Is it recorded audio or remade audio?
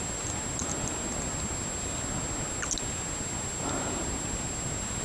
recorded